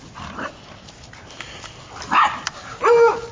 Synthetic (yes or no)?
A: no